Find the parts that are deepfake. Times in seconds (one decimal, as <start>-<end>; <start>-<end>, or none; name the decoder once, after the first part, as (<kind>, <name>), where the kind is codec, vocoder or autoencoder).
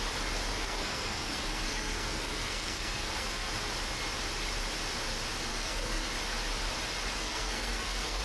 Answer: 0.5-3.5 (codec, SNAC); 5.5-6.1; 7.2-8.2